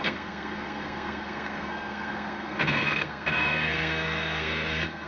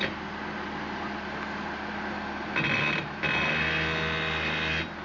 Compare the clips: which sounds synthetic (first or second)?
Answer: first